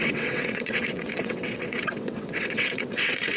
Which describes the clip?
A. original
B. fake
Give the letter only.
B